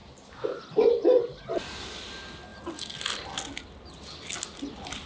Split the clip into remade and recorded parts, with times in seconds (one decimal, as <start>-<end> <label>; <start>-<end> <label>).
0.0-5.1 recorded